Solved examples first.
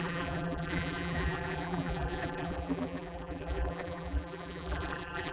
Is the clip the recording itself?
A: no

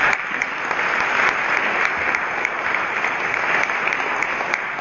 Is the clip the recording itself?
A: yes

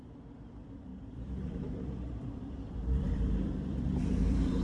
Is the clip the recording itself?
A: no